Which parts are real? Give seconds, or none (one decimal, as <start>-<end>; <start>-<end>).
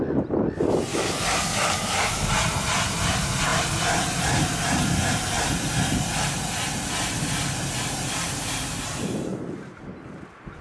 0.0-0.9; 2.3-10.6